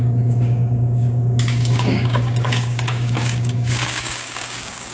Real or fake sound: fake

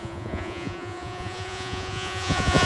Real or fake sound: fake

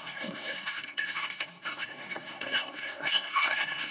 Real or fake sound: fake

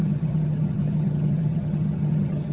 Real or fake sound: fake